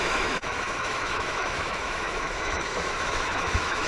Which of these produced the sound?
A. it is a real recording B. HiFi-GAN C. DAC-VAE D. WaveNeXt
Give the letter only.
C